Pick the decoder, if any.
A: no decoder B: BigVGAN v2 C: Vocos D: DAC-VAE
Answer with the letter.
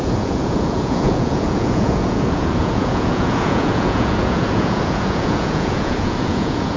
C